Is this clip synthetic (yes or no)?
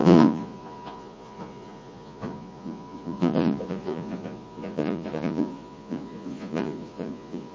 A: yes